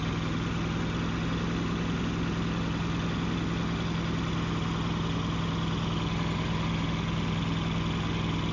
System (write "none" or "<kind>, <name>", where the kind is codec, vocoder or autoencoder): none